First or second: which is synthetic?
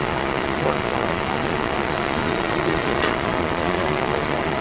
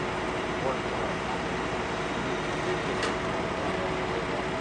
first